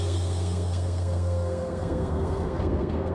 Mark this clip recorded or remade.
remade